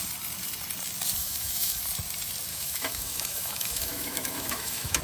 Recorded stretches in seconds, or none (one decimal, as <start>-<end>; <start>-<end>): 0.0-1.2; 1.8-2.5